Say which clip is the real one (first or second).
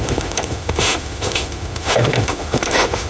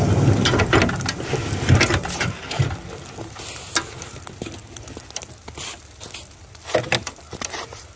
second